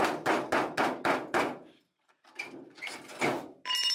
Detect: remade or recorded recorded